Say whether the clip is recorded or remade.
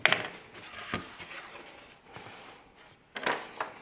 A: recorded